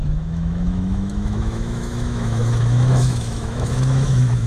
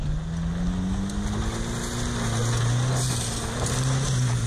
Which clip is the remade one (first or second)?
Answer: first